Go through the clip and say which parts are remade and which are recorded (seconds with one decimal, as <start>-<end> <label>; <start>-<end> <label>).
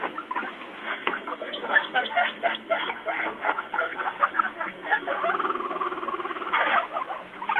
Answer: 0.0-0.8 recorded; 0.8-5.2 remade; 5.2-7.6 recorded